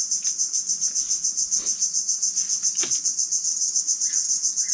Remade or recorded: recorded